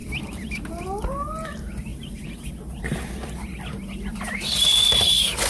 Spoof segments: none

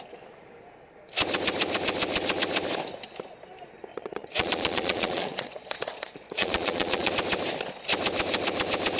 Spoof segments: 3.9-7.1

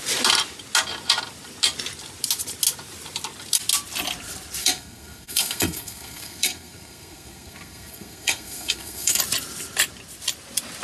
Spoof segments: 4.6-9.2

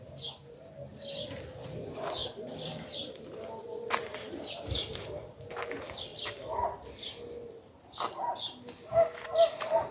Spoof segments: 2.2-4.5; 4.9-5.5